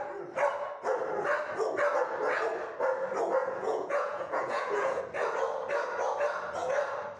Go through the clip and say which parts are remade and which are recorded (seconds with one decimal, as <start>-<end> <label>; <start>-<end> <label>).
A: 0.0-3.4 recorded; 3.4-5.0 remade; 5.0-7.2 recorded